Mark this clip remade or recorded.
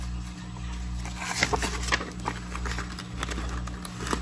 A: recorded